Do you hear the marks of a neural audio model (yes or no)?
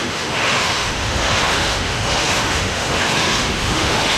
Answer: yes